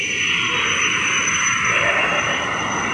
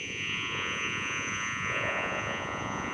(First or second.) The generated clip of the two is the second